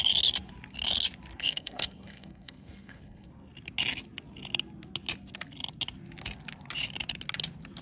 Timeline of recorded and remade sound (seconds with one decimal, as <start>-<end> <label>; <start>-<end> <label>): 0.0-1.4 recorded; 1.4-3.3 remade; 3.3-7.8 recorded